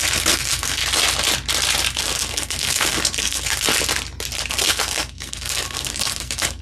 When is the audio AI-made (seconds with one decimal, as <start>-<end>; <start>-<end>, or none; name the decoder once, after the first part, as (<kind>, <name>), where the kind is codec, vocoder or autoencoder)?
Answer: 0.0-0.8 (codec, SNAC); 2.0-3.7; 4.5-6.6